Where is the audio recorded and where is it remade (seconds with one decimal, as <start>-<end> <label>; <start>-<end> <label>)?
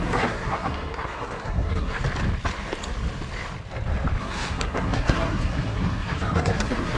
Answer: 0.0-2.0 remade; 2.0-4.2 recorded; 4.2-7.0 remade